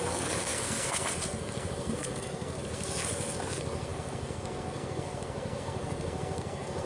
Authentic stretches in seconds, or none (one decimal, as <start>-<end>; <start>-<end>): none

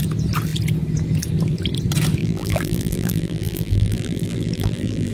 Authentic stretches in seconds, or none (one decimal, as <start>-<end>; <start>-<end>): 0.0-2.2